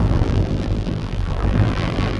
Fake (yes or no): yes